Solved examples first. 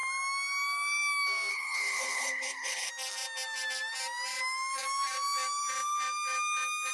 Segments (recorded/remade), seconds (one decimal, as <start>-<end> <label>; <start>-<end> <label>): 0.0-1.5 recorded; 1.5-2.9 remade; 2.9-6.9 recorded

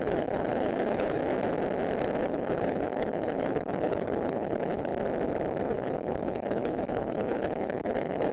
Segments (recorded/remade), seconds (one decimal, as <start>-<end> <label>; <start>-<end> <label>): 0.0-1.2 remade; 1.2-2.2 recorded; 2.2-4.9 remade; 4.9-5.6 recorded; 5.6-8.3 remade

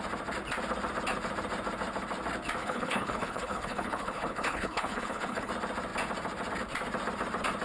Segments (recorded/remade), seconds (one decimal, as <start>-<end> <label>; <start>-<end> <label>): 0.0-2.6 recorded; 2.6-5.5 remade; 5.5-7.6 recorded

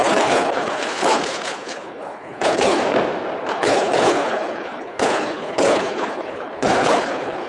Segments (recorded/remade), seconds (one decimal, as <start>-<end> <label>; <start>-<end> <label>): 0.0-2.8 remade; 2.8-3.5 recorded; 3.5-7.5 remade

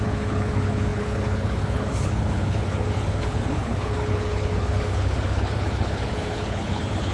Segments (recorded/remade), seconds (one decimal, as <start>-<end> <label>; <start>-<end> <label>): 0.0-7.1 remade

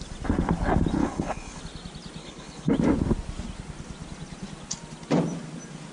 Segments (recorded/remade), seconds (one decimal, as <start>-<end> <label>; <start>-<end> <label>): 0.0-1.0 recorded; 1.0-1.6 remade; 1.6-2.2 recorded; 2.2-2.7 remade; 2.7-5.9 recorded

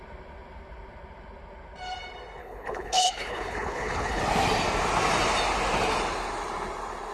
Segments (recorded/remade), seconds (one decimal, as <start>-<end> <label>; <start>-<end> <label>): 0.0-2.4 recorded; 2.4-4.2 remade; 4.2-7.1 recorded